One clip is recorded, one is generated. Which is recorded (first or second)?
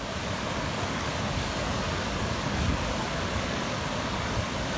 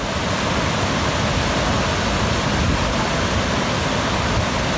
second